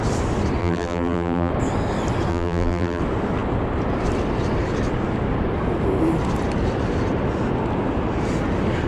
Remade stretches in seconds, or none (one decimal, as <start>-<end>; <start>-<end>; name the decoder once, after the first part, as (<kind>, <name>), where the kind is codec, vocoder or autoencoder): 0.6-1.5 (vocoder, BigVGAN v2); 2.3-3.0